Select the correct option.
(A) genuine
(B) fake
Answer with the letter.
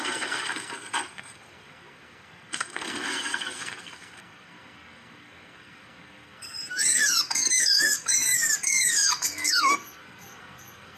B